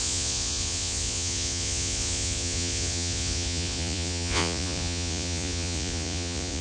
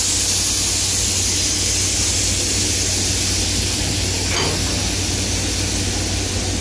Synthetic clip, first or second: first